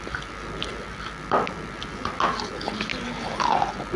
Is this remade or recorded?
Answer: recorded